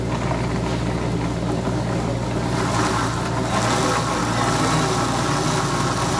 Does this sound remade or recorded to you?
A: recorded